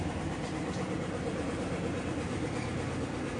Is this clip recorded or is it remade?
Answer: recorded